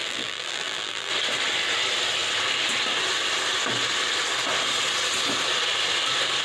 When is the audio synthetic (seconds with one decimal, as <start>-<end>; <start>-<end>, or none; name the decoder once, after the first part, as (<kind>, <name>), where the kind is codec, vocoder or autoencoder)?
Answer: 0.0-1.1 (vocoder, BigVGAN v2)